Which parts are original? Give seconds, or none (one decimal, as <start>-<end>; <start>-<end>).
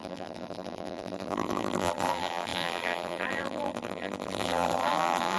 none